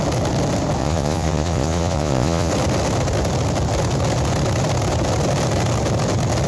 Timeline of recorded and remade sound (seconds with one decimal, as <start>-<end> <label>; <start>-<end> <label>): 0.0-0.8 recorded; 0.8-2.5 remade; 2.5-6.5 recorded